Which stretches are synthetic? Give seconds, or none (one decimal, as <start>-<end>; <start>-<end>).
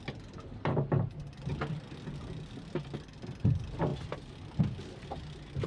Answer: none